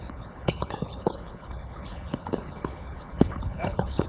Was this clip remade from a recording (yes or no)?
yes